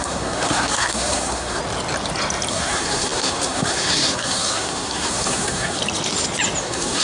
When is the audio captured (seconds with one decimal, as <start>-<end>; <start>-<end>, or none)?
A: 1.6-2.5; 5.8-6.6